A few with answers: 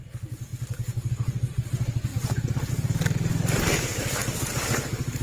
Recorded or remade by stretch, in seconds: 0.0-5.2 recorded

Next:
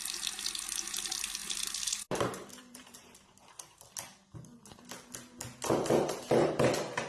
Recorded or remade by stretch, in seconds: 0.0-1.4 recorded; 1.4-3.9 remade; 3.9-7.1 recorded

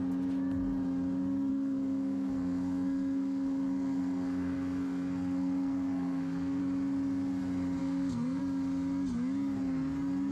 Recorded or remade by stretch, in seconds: 0.0-1.5 recorded; 1.5-6.6 remade; 6.6-7.8 recorded; 7.8-8.4 remade; 8.4-10.3 recorded

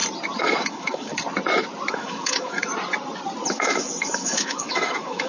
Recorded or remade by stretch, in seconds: 0.0-0.6 recorded; 0.6-1.1 remade; 1.1-1.9 recorded; 1.9-2.7 remade; 2.7-3.5 recorded; 3.5-5.3 remade

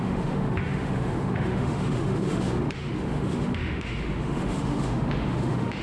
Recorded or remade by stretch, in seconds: 0.0-5.8 remade

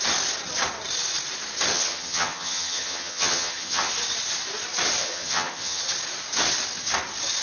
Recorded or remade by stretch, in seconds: 0.0-1.7 recorded; 1.7-3.9 remade; 3.9-5.0 recorded; 5.0-5.8 remade; 5.8-7.4 recorded

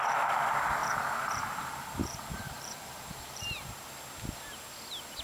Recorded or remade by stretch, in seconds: 0.0-0.8 recorded; 0.8-3.9 remade; 3.9-5.2 recorded